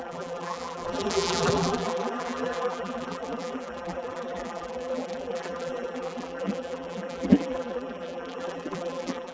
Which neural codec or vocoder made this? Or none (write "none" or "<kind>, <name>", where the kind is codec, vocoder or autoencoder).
vocoder, BigVGAN v2